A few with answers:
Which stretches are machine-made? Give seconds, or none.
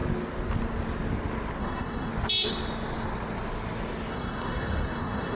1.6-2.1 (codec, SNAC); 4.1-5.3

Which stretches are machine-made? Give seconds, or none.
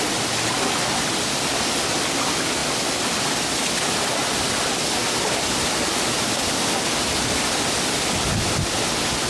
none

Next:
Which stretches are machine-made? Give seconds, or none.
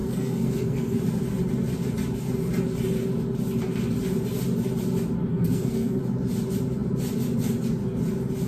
0.0-1.0 (codec, SNAC); 5.3-6.0